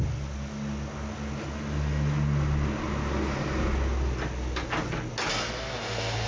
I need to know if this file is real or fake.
real